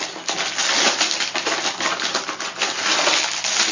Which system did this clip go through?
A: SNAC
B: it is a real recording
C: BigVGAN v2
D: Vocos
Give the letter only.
B